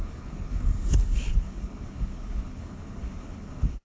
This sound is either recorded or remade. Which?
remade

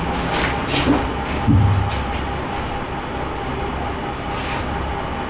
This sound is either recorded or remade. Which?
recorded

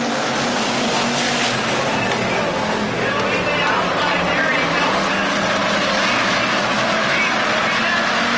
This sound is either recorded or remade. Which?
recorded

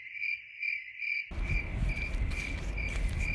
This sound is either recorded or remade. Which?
recorded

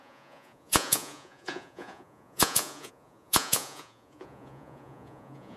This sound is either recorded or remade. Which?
remade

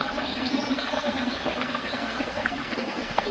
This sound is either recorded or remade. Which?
remade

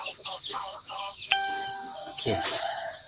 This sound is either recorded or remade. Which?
remade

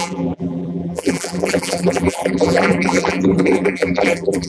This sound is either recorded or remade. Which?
remade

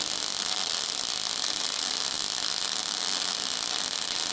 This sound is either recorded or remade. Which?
recorded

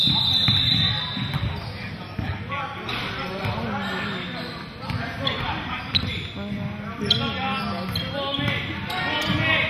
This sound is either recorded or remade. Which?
recorded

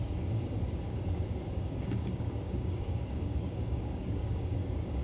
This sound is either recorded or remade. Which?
remade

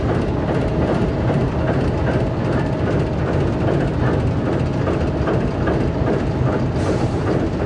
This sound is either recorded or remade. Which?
recorded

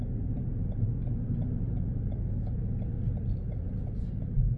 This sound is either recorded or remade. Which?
recorded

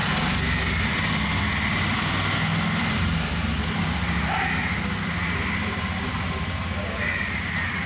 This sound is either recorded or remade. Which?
recorded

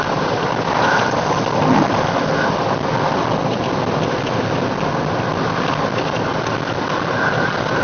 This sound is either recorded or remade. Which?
recorded